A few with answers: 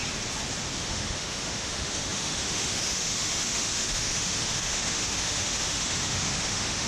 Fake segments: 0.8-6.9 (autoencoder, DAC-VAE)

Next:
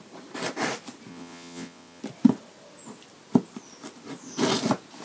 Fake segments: 1.1-2.0 (vocoder, WaveNeXt)

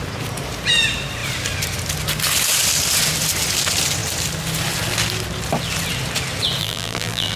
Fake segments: 6.6-7.4 (vocoder, BigVGAN v2)

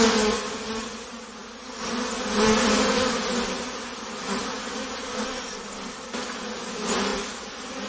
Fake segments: none

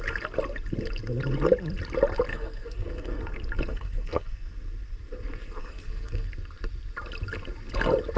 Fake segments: 2.3-3.2 (codec, SNAC); 3.7-4.5; 5.6-6.3